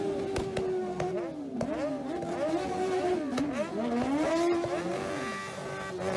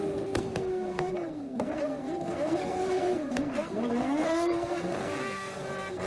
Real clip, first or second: first